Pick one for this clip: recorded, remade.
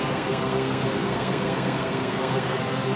remade